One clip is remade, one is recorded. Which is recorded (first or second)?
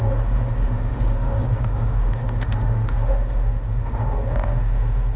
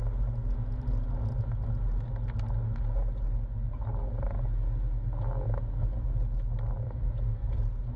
second